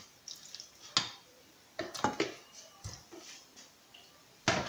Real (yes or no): yes